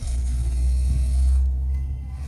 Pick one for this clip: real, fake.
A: fake